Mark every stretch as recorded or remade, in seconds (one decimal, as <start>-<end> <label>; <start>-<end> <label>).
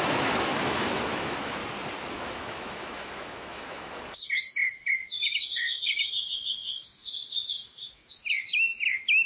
0.0-1.6 remade; 1.6-2.1 recorded; 2.1-9.3 remade